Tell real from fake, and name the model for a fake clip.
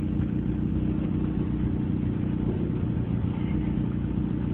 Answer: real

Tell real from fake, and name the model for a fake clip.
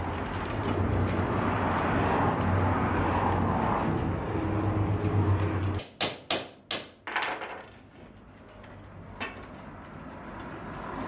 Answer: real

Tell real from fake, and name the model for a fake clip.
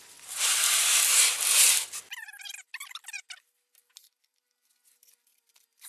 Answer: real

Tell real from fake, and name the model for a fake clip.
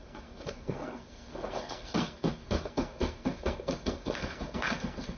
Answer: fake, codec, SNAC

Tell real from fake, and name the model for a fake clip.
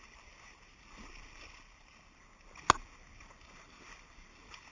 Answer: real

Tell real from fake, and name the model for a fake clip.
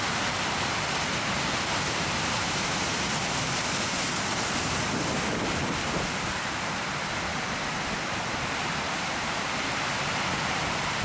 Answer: real